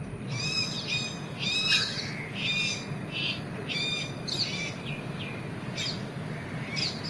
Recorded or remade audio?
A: recorded